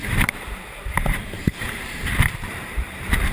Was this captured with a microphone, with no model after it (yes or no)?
no